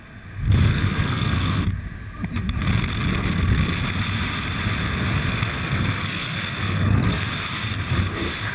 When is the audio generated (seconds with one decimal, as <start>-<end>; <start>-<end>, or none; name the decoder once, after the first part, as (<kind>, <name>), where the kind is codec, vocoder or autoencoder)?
0.7-1.6 (codec, SNAC); 5.3-7.3